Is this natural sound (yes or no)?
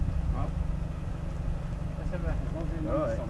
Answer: yes